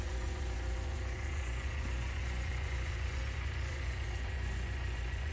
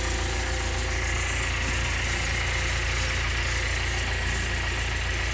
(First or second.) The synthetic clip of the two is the first